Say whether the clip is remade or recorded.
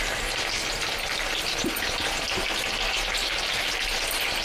recorded